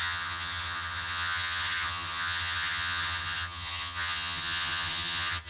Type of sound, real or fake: fake